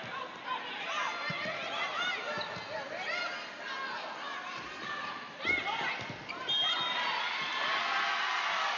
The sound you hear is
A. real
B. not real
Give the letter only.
A